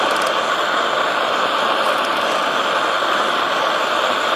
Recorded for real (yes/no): yes